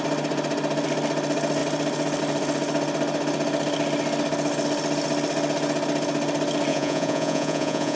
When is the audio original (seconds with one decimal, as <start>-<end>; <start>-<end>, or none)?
0.0-6.7